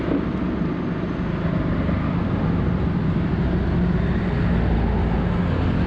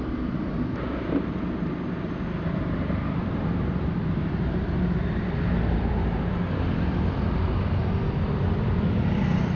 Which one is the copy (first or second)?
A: second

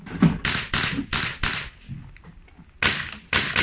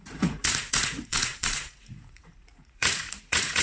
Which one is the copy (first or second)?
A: second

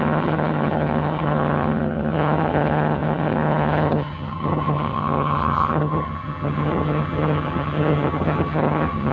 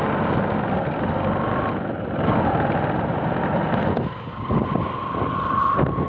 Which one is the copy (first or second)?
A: first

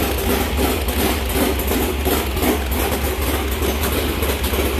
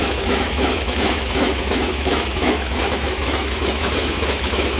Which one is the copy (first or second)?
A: second